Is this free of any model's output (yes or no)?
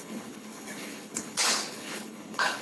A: no